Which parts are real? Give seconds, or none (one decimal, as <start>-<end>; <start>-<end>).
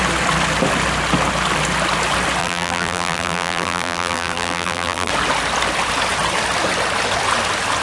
0.0-2.4; 5.1-7.8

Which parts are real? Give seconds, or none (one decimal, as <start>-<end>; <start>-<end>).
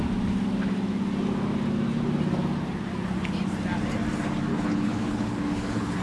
0.0-4.5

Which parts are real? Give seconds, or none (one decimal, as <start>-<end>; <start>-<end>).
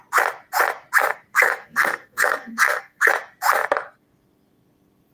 0.0-1.3; 3.1-5.1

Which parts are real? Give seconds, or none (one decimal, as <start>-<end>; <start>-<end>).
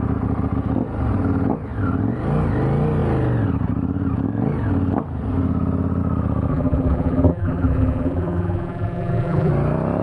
0.0-6.5; 9.5-10.0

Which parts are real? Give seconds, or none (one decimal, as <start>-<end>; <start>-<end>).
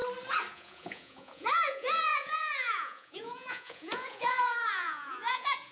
0.0-0.5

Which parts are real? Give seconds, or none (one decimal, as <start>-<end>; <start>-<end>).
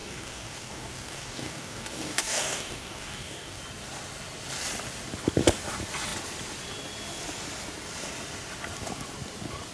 3.6-9.7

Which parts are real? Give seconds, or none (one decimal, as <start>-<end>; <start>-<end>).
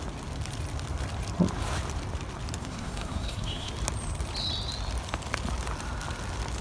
0.0-2.6; 3.7-6.6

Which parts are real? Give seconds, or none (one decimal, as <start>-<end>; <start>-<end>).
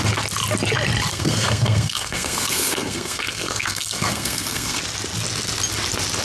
0.0-1.1; 4.8-6.2